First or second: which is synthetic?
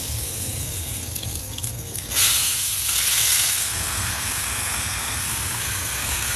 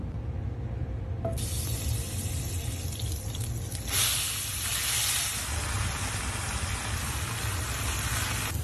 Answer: first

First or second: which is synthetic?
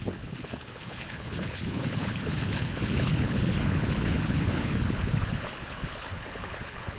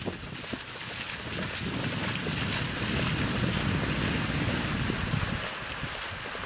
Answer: first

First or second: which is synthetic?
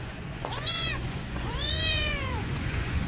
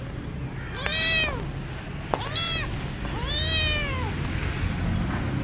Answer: first